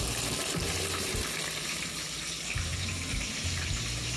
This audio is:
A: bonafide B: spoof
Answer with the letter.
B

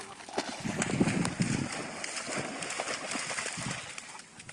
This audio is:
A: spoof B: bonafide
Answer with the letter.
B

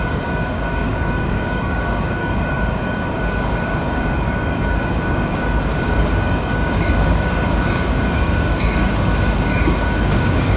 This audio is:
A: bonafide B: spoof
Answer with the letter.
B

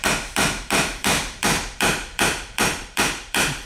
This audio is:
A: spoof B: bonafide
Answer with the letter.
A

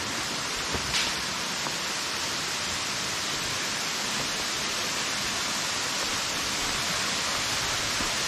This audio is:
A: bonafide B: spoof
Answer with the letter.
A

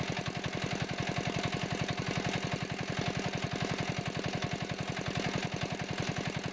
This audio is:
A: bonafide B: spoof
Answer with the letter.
A